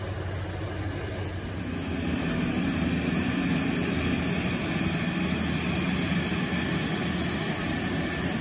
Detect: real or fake real